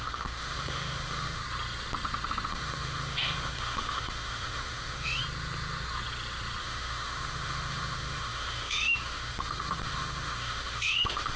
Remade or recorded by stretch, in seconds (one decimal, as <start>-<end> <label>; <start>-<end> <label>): 0.0-1.4 remade; 1.4-2.5 recorded; 2.5-5.2 remade; 5.2-6.6 recorded; 6.6-11.4 remade